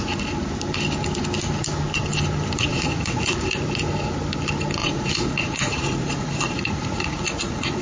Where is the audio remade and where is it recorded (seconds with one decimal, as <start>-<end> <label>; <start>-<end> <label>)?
0.0-2.7 recorded; 2.7-3.6 remade; 3.6-4.8 recorded; 4.8-7.8 remade